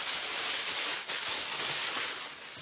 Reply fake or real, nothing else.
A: real